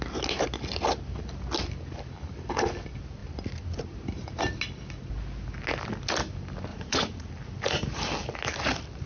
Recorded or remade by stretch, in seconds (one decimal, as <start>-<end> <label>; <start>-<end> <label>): 0.0-6.7 recorded; 6.7-7.3 remade; 7.3-9.1 recorded